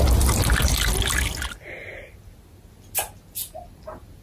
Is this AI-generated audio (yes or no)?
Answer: no